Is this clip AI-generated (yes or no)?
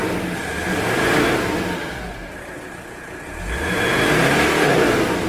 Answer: no